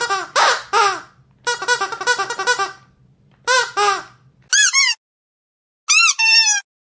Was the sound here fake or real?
real